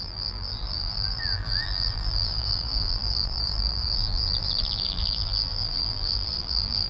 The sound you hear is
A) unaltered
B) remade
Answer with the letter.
B